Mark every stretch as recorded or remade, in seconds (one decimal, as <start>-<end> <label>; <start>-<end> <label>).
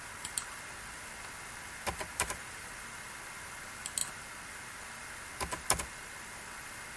0.0-2.1 recorded; 2.1-2.7 remade; 2.7-7.0 recorded